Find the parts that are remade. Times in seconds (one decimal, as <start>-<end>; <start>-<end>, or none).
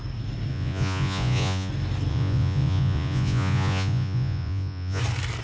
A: 0.5-1.7; 2.1-5.0